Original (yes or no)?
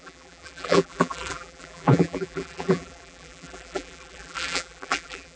no